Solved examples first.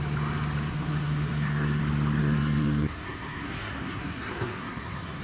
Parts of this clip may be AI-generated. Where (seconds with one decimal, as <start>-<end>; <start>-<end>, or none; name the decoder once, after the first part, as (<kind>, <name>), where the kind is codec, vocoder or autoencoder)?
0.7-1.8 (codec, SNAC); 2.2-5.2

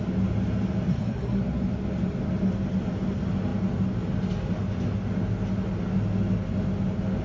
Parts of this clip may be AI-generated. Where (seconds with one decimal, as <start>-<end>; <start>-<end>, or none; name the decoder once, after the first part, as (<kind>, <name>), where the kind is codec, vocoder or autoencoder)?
0.9-1.4 (codec, SNAC)

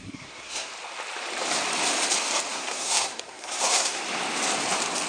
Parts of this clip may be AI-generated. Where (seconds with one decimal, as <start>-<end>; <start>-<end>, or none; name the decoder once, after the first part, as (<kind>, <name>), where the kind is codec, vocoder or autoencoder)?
0.0-0.7 (codec, SNAC); 2.5-4.0